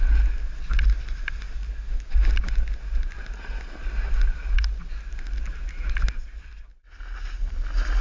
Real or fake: real